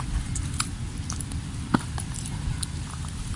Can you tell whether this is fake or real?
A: real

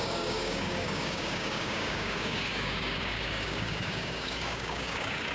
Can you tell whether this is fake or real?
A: fake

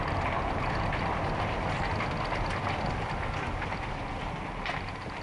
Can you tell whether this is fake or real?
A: real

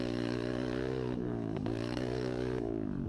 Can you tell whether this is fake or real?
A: fake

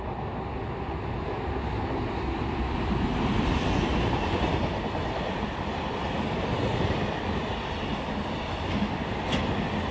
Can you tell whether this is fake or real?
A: real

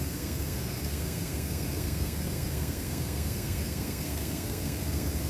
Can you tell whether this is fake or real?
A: fake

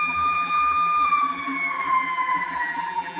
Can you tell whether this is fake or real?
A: fake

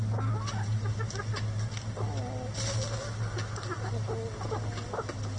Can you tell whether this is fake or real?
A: real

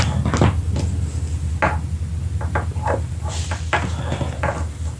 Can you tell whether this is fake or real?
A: real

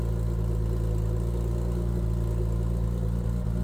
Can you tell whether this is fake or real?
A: real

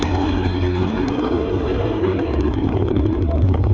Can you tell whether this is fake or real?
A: fake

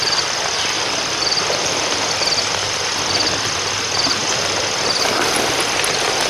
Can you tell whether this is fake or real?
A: fake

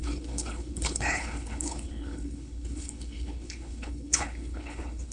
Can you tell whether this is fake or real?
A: fake